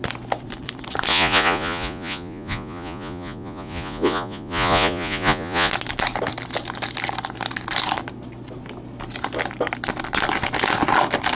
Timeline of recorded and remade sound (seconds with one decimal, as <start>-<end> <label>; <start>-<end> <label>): 0.0-1.1 recorded; 1.1-5.7 remade; 5.7-11.4 recorded